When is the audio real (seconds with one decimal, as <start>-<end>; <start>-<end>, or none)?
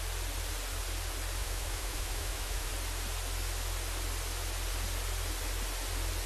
0.0-1.4; 2.7-6.3